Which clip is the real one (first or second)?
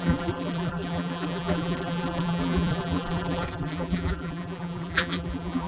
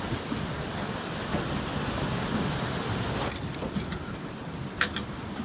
second